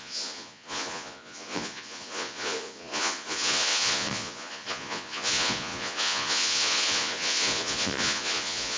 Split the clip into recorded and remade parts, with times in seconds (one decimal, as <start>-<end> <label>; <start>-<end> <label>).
0.0-8.8 remade